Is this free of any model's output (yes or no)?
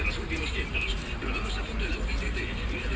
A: yes